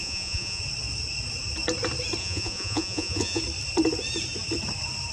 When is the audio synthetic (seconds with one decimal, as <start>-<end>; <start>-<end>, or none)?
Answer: 0.0-0.6; 2.2-3.4